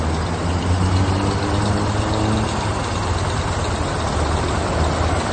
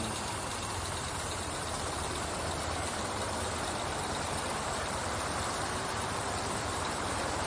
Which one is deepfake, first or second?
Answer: second